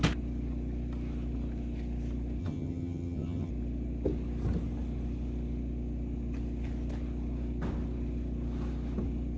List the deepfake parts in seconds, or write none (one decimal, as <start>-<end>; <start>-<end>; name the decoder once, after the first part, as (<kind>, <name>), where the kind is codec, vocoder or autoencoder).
2.4-3.5 (vocoder, HiFi-GAN)